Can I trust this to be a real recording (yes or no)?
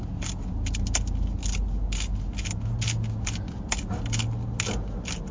yes